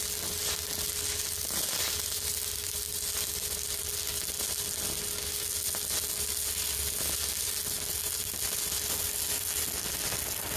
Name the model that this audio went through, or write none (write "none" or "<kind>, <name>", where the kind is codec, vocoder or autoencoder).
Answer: none